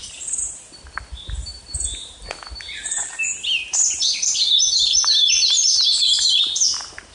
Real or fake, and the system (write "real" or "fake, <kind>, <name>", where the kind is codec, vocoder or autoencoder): real